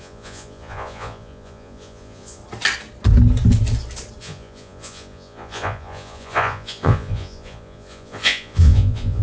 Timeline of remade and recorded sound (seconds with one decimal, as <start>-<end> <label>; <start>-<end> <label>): 0.0-2.4 remade; 2.4-4.2 recorded; 4.2-9.2 remade